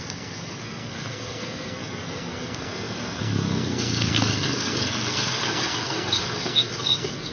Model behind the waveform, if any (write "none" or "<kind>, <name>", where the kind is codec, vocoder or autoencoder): codec, SNAC